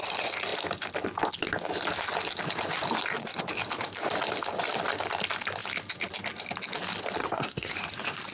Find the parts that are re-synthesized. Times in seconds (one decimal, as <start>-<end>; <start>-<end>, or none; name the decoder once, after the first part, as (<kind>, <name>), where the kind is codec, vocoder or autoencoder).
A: 7.2-7.7 (codec, SNAC)